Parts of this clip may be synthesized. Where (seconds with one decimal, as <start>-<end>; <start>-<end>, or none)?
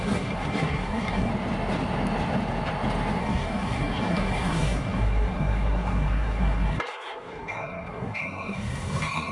0.0-1.3; 3.2-9.3